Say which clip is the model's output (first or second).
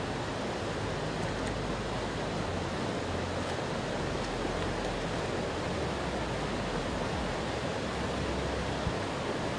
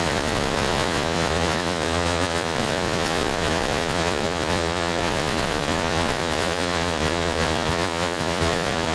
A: second